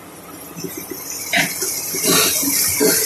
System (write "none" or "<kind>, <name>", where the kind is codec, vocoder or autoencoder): none